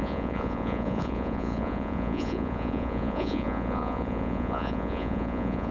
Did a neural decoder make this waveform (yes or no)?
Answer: yes